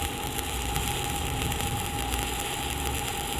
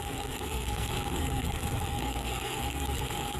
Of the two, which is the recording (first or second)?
first